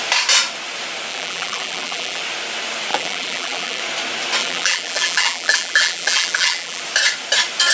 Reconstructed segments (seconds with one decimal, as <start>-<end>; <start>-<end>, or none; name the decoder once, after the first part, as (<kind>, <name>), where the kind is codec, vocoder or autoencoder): 1.1-2.2 (vocoder, BigVGAN v2); 2.9-3.8; 4.4-6.8